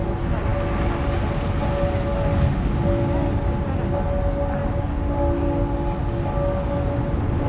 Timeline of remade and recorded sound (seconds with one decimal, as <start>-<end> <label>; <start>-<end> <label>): 0.0-7.5 recorded